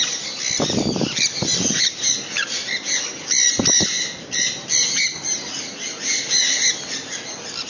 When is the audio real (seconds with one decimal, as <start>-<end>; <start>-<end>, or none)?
0.0-7.7

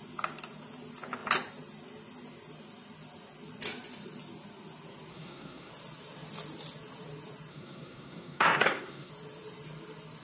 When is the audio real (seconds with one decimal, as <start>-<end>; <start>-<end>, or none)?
0.0-5.1; 5.7-7.5; 9.1-10.2

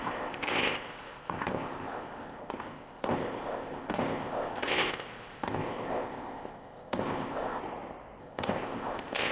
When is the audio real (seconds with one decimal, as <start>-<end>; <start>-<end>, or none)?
7.6-8.2

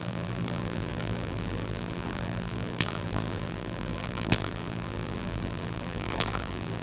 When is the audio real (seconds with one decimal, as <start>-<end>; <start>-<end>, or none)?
none

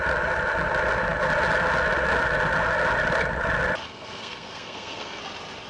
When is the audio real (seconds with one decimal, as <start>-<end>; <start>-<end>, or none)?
0.0-3.8; 5.2-5.7